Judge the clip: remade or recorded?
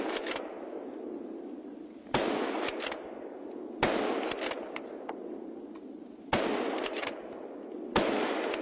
recorded